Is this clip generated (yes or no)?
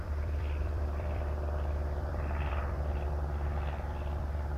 yes